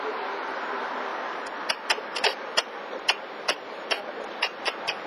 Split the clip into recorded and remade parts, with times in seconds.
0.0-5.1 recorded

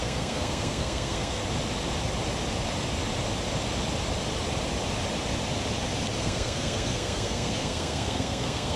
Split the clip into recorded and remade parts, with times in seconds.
0.0-1.4 remade; 1.4-6.2 recorded; 6.2-8.8 remade

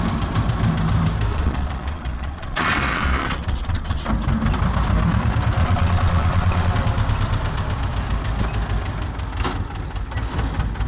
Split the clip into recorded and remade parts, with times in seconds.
0.0-1.3 recorded; 1.3-4.1 remade; 4.1-5.6 recorded; 5.6-6.7 remade; 6.7-10.9 recorded